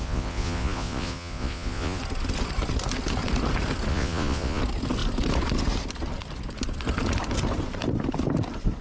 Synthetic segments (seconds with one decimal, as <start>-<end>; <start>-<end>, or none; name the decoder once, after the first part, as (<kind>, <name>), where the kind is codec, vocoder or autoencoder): 0.0-2.0 (vocoder, Vocos); 3.9-4.6